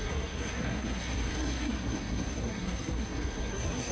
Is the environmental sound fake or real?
fake